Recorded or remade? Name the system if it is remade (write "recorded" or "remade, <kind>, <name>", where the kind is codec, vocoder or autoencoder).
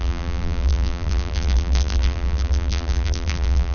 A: remade, vocoder, BigVGAN v2